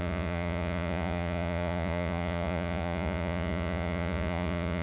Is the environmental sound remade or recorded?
remade